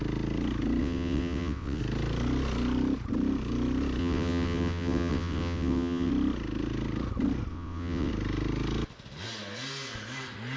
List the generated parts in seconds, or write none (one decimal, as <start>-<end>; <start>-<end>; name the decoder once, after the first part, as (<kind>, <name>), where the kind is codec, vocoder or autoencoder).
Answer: 0.8-1.8 (vocoder, WaveNeXt); 4.0-6.1; 7.5-8.1